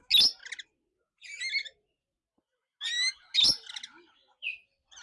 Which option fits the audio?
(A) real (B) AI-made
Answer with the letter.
A